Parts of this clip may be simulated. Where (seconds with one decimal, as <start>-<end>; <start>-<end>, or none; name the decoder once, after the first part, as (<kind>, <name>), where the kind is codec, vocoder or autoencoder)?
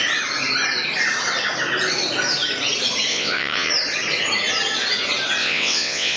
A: 3.1-3.7 (vocoder, WaveNeXt); 5.4-6.2